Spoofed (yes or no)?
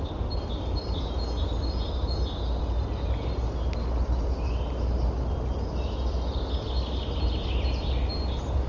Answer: no